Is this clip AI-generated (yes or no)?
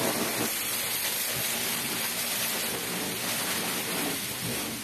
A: no